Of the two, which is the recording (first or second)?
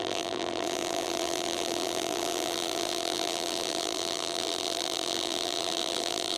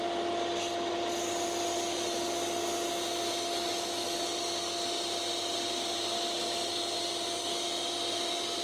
second